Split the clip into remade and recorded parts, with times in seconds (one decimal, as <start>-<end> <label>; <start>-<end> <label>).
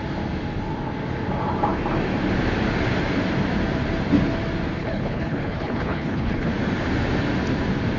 0.0-4.8 recorded; 4.8-6.5 remade; 6.5-8.0 recorded